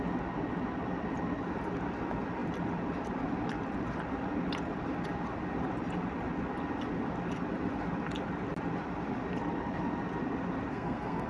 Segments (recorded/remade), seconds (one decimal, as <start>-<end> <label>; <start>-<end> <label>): 0.0-10.7 recorded; 10.7-11.3 remade